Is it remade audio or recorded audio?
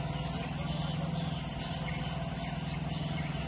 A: recorded